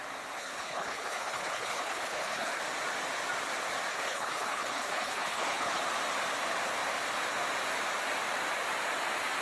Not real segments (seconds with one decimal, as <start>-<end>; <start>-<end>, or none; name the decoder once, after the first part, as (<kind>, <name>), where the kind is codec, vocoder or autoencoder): 0.4-2.6 (codec, HILCodec); 3.9-5.8